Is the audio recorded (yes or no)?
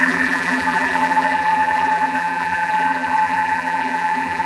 no